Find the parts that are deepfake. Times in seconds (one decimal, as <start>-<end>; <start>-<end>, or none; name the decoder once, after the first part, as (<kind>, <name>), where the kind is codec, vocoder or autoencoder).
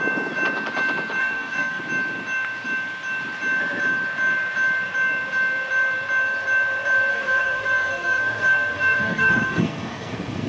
1.2-1.8 (codec, SNAC); 7.1-10.5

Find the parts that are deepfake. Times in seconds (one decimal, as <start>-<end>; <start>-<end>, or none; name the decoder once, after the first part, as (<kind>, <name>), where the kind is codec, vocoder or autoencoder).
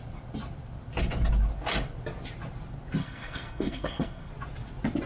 3.0-4.3 (codec, SNAC)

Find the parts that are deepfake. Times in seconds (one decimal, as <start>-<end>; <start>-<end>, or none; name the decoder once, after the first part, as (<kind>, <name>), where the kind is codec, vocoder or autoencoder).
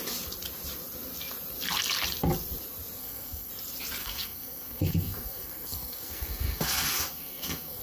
3.0-3.5 (codec, SNAC); 4.0-7.8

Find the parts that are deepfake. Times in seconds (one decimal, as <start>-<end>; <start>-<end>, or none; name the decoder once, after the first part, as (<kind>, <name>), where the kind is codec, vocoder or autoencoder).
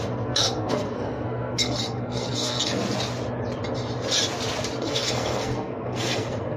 0.0-2.8 (codec, SNAC); 4.8-6.6